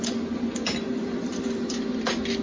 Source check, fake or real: real